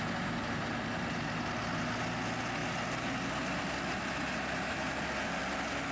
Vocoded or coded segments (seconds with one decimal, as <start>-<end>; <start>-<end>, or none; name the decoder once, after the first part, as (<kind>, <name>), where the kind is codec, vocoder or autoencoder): none